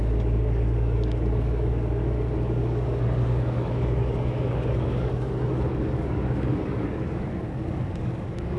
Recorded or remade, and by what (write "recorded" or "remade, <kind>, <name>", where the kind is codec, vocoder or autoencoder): remade, codec, DAC